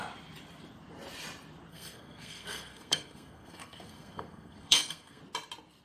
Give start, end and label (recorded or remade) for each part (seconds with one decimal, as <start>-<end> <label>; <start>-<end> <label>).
0.0-1.7 recorded; 1.7-5.2 remade; 5.2-5.8 recorded